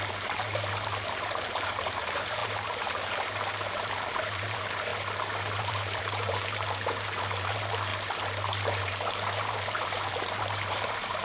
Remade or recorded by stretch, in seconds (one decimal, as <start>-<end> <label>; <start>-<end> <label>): 0.0-4.9 remade; 4.9-5.6 recorded; 5.6-7.9 remade; 7.9-8.8 recorded; 8.8-11.2 remade